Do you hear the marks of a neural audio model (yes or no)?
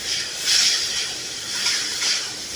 yes